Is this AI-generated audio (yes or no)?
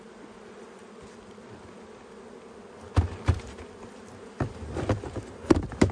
no